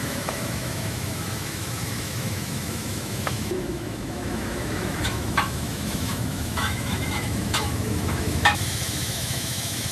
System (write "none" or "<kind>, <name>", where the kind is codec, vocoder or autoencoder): autoencoder, DAC-VAE